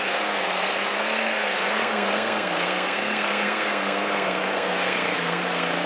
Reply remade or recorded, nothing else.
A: remade